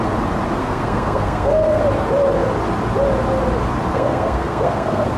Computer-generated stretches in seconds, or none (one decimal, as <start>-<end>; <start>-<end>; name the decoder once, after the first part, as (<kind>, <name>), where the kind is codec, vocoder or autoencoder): 0.6-1.8 (codec, SNAC); 3.9-5.2